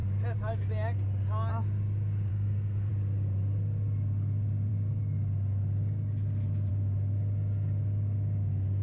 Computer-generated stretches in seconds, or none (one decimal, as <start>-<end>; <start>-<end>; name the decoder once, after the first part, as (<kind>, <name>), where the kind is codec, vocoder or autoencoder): 2.3-2.9 (codec, SNAC)